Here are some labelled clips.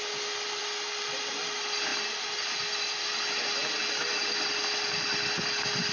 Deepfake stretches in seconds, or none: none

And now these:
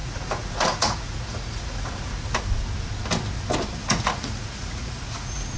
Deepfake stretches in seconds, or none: 0.0-2.4 (vocoder, Vocos); 3.8-5.6

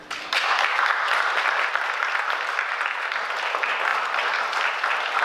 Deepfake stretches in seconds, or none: none

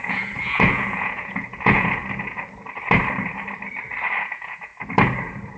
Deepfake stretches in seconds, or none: 0.0-2.0 (vocoder, Vocos); 4.2-4.7

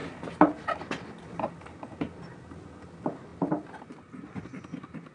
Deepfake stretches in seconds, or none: none

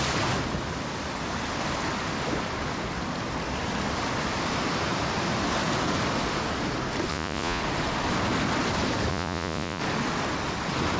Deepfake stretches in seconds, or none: 7.1-7.6 (vocoder, Vocos); 9.1-9.8